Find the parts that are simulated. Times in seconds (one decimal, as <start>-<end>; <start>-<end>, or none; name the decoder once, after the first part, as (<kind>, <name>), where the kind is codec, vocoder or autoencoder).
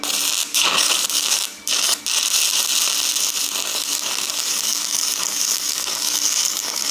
0.4-2.0 (codec, DAC); 3.7-6.9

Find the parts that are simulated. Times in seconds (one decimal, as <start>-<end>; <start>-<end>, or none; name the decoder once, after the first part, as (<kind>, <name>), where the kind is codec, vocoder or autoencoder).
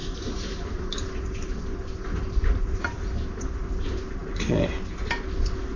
0.0-3.5 (vocoder, BigVGAN v2)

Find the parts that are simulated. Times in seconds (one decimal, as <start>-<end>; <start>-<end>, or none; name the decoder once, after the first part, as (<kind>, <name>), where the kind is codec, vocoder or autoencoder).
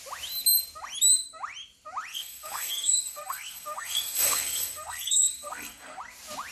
2.1-6.0 (codec, SNAC)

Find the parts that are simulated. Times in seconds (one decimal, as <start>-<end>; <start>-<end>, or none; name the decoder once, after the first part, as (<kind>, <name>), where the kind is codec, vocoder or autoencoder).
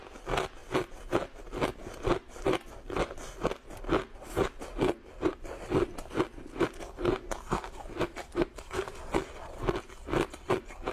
none